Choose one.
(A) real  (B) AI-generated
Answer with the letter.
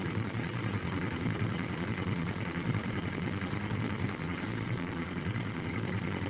B